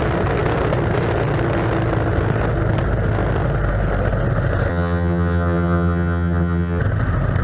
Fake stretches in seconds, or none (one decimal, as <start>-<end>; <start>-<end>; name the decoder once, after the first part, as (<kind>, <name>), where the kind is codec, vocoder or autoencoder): 4.7-6.8 (vocoder, HiFi-GAN)